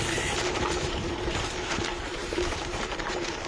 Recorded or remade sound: remade